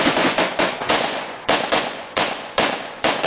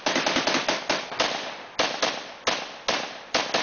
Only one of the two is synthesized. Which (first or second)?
first